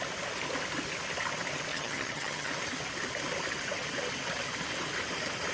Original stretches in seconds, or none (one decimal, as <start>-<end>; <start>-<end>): 0.0-1.7; 2.5-5.5